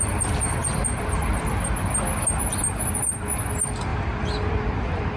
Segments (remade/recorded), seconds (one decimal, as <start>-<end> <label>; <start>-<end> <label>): 0.0-3.9 remade; 3.9-4.5 recorded; 4.5-5.2 remade